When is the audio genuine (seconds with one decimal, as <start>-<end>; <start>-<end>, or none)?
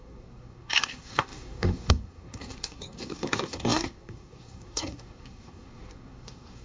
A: none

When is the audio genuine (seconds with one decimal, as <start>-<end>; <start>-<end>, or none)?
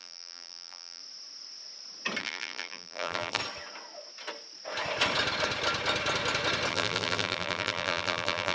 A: 1.0-2.2; 3.4-6.7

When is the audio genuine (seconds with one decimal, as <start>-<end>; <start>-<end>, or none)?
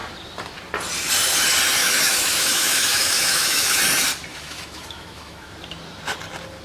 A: 0.0-1.8; 3.8-4.3; 5.5-6.6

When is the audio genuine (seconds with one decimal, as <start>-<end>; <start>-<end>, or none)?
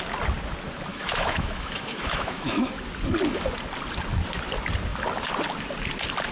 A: 0.0-0.9; 2.7-6.3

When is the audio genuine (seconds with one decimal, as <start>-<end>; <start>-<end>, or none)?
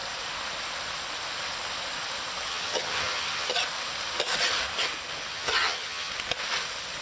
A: 0.0-2.5; 3.5-5.3; 6.1-7.0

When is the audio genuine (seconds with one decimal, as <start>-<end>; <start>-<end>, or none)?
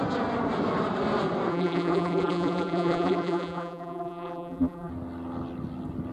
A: 0.0-1.5; 4.9-6.1